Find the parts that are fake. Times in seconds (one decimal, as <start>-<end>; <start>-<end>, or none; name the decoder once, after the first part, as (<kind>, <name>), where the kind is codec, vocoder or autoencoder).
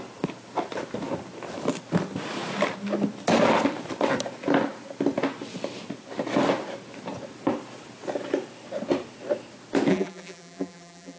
9.9-11.2 (vocoder, BigVGAN v2)